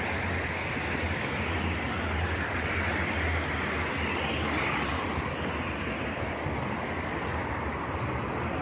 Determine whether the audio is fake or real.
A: real